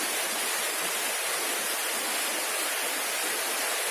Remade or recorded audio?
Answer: recorded